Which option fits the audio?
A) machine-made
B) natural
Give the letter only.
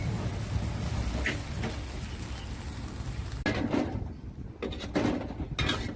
B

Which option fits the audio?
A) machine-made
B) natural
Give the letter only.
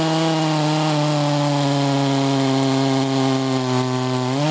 B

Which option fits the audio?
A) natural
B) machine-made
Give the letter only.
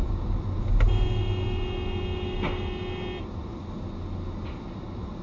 A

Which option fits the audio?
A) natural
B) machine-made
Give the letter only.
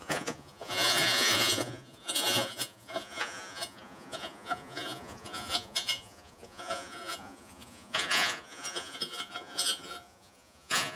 B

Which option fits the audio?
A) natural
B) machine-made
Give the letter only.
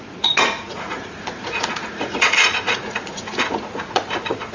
B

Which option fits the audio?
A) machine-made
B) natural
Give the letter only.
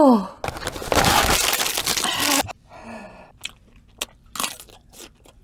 B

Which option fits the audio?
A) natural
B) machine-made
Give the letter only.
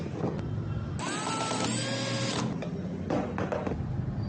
A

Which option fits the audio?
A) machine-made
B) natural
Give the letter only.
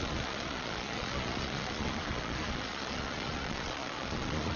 A